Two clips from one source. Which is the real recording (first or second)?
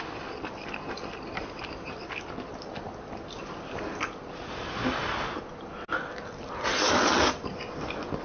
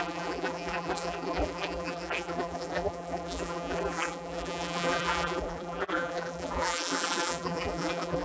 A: first